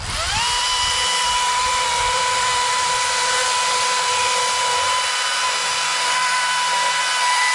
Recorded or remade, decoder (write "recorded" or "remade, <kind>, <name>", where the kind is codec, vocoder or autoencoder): recorded